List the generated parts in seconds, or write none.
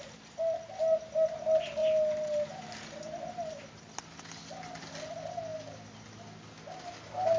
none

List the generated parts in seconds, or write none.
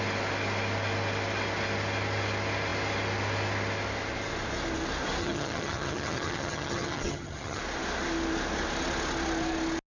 5.2-7.6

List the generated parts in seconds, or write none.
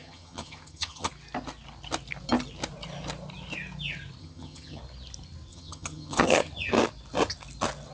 0.0-1.1; 4.2-4.8; 5.5-6.5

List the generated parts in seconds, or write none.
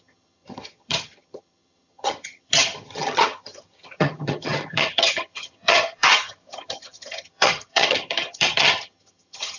0.0-9.6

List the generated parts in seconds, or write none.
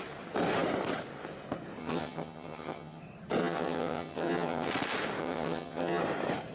1.8-3.0; 3.4-4.7; 5.2-6.0